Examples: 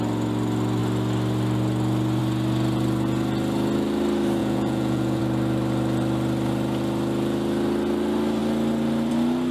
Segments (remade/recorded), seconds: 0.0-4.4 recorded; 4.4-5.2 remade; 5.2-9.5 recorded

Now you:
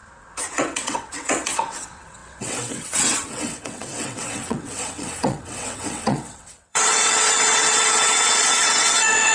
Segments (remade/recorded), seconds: 0.0-0.5 recorded; 0.5-9.3 remade